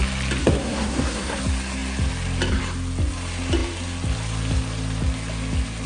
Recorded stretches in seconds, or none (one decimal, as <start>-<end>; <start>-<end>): 0.0-0.4; 1.4-5.9